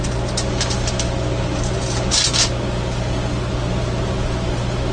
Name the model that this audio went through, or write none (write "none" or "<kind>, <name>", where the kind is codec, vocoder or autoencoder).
none